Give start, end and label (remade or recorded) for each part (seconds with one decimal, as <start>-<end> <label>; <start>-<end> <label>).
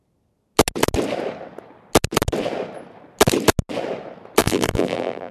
0.0-4.4 recorded; 4.4-5.3 remade